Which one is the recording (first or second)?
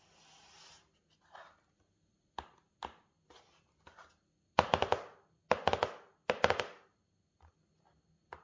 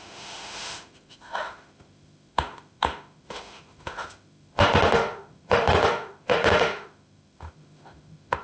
first